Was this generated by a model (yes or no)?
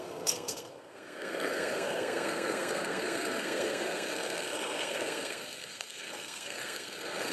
yes